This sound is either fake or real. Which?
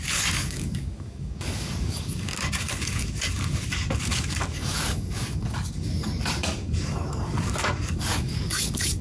fake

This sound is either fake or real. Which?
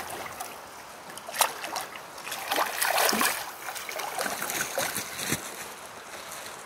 real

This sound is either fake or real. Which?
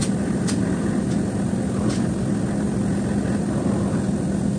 real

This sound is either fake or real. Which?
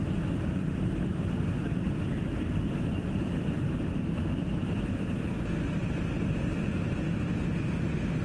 real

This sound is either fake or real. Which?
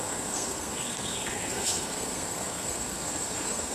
fake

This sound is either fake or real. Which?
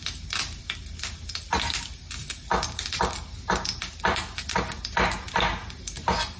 real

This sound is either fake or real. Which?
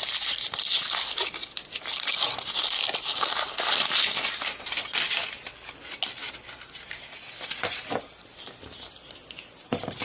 real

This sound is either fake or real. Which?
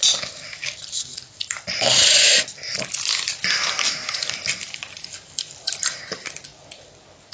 real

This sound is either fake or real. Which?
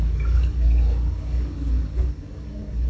fake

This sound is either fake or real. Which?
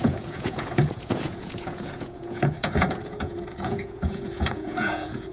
fake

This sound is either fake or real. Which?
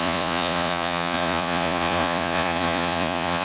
fake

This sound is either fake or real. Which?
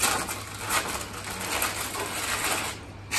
real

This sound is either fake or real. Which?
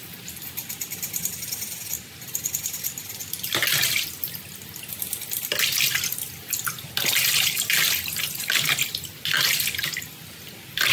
real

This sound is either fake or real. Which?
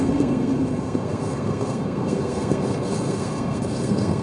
fake